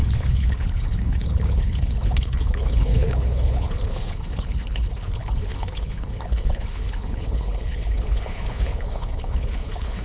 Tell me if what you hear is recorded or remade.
remade